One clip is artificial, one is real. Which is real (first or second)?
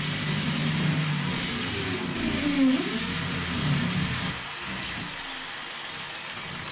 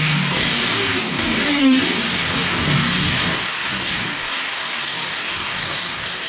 first